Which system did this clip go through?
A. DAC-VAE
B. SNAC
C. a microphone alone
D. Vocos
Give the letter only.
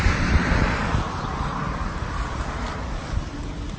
C